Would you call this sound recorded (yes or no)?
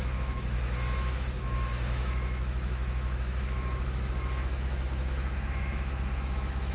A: no